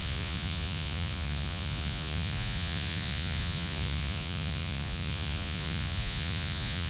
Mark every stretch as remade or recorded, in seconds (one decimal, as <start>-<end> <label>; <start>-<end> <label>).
0.0-6.9 remade